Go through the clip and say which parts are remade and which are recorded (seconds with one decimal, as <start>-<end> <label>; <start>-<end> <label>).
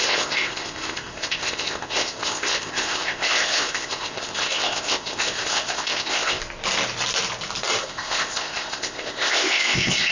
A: 0.0-6.4 remade; 6.4-7.8 recorded; 7.8-10.1 remade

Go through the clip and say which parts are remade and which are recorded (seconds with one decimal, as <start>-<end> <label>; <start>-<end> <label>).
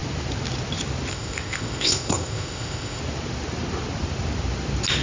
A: 0.0-1.1 recorded; 1.1-3.0 remade; 3.0-5.0 recorded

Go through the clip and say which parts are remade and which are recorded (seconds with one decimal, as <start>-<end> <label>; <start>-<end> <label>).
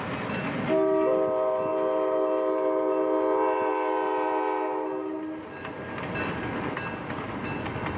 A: 0.0-8.0 recorded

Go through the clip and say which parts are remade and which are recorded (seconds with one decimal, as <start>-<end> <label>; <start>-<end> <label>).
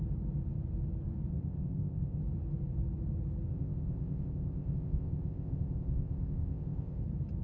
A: 0.0-1.3 recorded; 1.3-2.2 remade; 2.2-3.5 recorded; 3.5-7.0 remade; 7.0-7.4 recorded